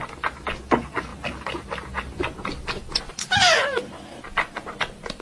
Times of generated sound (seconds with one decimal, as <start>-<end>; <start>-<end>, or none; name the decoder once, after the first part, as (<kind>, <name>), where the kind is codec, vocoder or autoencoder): none